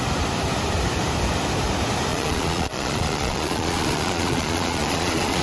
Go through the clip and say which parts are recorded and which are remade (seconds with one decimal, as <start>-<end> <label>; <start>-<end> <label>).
0.0-2.1 recorded; 2.1-5.4 remade